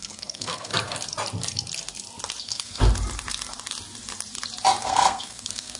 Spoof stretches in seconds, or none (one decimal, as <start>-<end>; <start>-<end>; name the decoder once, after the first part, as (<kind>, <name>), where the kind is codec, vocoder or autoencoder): 0.0-0.7 (codec, SNAC); 2.4-2.8; 4.8-5.8